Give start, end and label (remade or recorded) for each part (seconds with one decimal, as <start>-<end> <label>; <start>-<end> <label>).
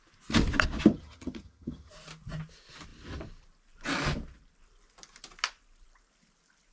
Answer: 0.0-0.9 recorded; 0.9-1.9 remade; 1.9-6.7 recorded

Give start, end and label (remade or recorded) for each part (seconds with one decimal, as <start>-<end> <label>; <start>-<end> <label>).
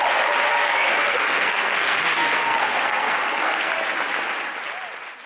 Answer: 0.0-0.5 recorded; 0.5-3.7 remade; 3.7-5.3 recorded